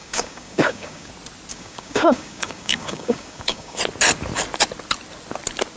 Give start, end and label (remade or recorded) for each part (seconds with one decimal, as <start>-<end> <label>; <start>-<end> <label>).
0.0-1.1 remade; 1.1-1.5 recorded; 1.5-3.8 remade; 3.8-5.8 recorded